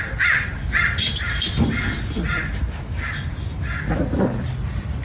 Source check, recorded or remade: recorded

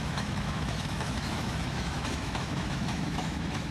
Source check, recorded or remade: remade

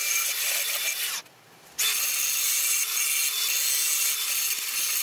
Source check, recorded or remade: recorded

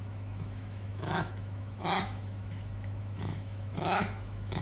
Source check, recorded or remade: remade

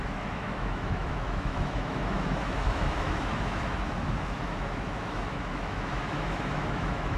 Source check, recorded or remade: remade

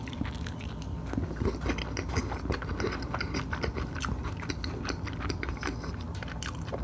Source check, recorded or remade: recorded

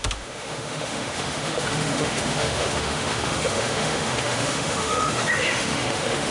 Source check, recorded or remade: remade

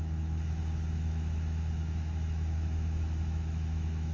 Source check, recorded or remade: remade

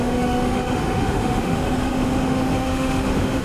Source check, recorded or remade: remade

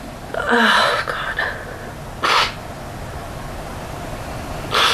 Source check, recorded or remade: recorded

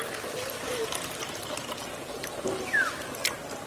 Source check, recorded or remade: recorded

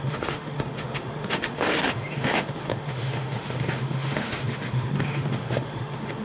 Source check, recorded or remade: remade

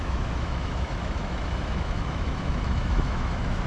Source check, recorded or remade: remade